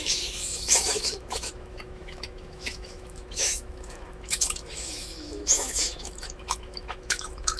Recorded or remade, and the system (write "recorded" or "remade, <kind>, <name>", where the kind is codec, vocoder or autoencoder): remade, autoencoder, DAC-VAE